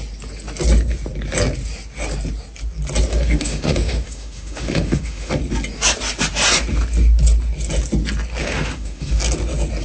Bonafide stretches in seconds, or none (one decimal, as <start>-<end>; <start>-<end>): 0.0-3.1; 5.3-8.4; 9.2-9.8